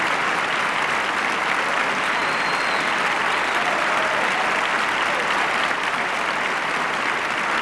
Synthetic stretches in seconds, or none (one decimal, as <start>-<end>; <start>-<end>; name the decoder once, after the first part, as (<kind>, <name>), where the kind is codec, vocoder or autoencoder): none